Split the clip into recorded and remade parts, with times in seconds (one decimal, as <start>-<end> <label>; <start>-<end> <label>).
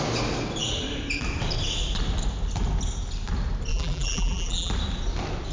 0.0-3.7 recorded; 3.7-4.7 remade; 4.7-5.5 recorded